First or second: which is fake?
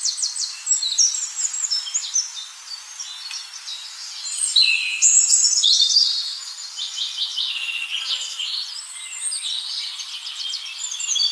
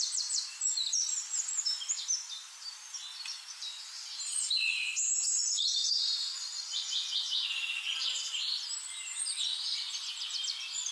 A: second